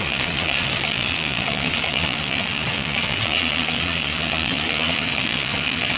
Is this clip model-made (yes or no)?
yes